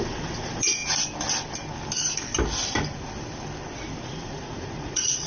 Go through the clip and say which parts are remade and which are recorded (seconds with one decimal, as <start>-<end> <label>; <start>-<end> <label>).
0.0-0.8 remade; 0.8-4.0 recorded; 4.0-5.3 remade